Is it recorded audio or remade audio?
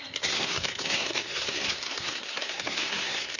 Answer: remade